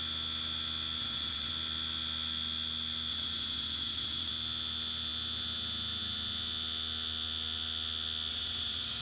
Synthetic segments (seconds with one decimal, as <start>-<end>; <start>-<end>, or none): 1.0-1.5; 3.1-4.3; 8.3-9.0